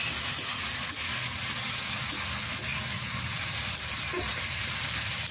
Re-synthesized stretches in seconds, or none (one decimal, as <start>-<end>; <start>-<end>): 2.7-5.3